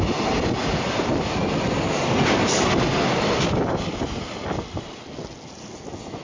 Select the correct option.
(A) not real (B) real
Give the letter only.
B